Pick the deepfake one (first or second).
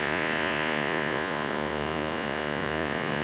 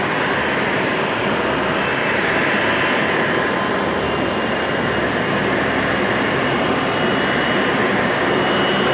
first